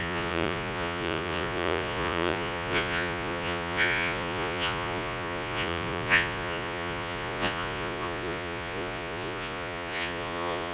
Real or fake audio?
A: fake